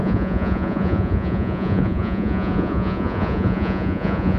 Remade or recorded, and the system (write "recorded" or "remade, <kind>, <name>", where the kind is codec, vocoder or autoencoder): remade, vocoder, Vocos